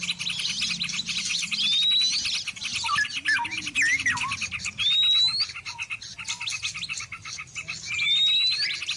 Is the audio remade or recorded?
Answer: recorded